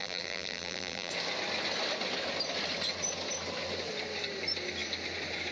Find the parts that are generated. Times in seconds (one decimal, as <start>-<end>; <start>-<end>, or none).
0.0-1.1